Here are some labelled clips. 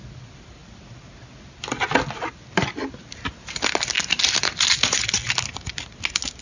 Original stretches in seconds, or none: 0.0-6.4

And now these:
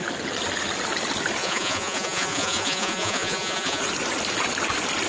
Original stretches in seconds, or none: 0.0-1.4; 3.8-5.1

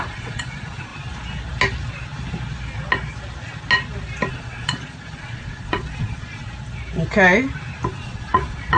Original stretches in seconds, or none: 0.9-4.3; 6.4-7.9

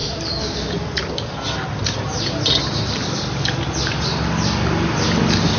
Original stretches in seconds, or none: 0.0-5.6